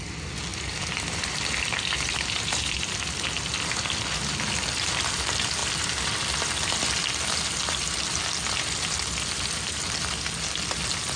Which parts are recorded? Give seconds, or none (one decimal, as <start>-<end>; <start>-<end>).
0.0-0.5; 3.4-11.2